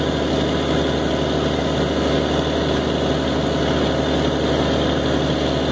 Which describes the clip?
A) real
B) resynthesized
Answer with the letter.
A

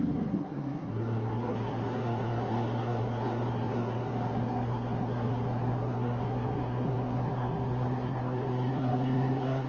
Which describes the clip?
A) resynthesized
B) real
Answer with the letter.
A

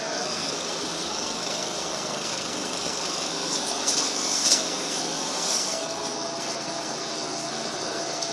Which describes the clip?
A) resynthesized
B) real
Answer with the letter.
A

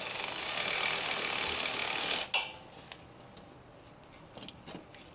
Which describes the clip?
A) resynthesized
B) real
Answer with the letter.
B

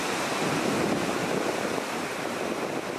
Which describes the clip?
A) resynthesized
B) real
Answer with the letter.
B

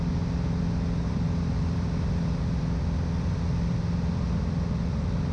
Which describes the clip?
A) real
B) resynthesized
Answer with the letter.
A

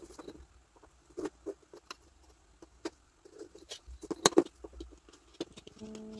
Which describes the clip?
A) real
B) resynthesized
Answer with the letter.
A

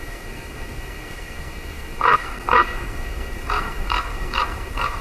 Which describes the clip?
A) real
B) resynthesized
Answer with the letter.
B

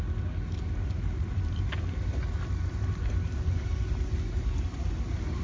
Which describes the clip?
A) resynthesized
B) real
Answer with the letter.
B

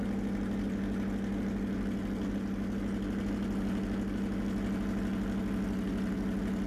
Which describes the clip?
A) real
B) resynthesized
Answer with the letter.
A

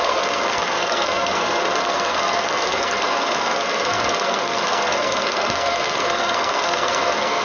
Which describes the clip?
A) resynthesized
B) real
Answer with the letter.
A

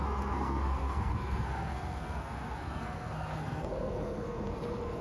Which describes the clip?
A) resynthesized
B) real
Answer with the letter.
A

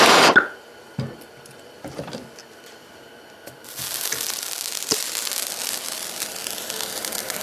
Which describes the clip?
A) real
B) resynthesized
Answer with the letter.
A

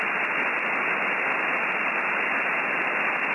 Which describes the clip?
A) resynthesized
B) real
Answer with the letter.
B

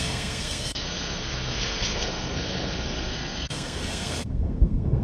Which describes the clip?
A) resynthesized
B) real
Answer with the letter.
A